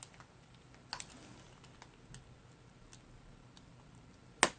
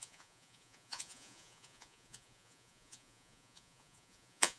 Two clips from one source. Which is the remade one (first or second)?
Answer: second